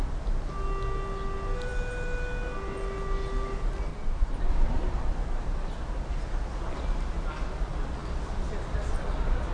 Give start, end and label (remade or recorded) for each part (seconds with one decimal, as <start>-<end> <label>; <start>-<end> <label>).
0.0-3.9 recorded; 3.9-4.5 remade; 4.5-8.0 recorded; 8.0-9.5 remade